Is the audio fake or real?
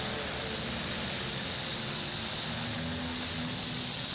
real